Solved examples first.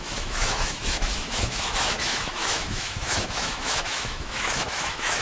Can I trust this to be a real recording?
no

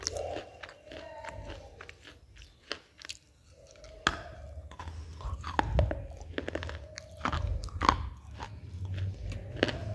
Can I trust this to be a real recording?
yes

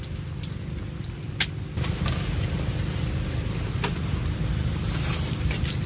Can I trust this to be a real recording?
yes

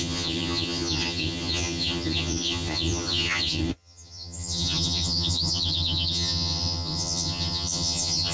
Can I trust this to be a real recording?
no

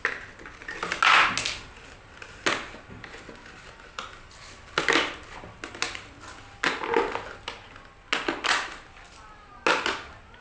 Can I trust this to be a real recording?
yes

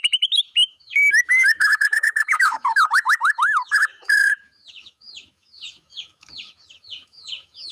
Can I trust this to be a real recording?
no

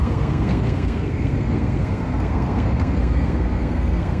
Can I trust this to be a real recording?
no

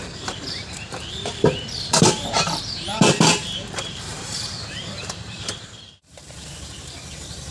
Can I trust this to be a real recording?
no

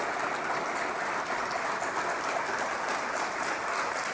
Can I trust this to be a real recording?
yes